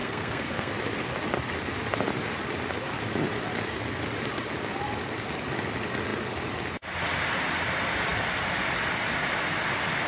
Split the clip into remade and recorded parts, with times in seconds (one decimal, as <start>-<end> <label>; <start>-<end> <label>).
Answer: 0.0-0.7 remade; 0.7-10.1 recorded